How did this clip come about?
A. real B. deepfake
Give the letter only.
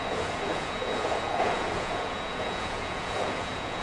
B